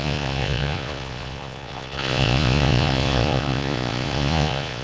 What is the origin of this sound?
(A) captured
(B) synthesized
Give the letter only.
B